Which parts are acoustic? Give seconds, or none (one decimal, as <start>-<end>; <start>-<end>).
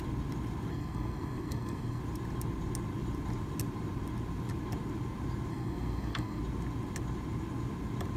0.0-0.7; 2.0-5.5; 6.4-8.2